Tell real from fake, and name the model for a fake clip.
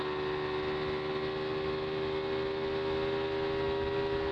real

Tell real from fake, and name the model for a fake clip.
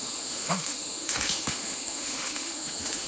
fake, autoencoder, DAC-VAE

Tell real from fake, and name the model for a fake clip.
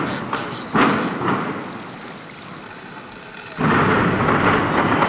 real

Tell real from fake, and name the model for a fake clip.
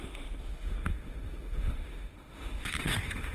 fake, autoencoder, DAC-VAE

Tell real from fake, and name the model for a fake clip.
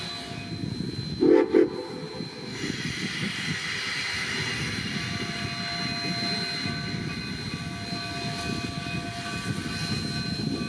real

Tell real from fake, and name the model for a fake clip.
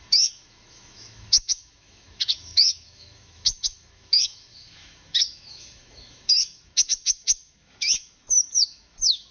fake, autoencoder, DAC-VAE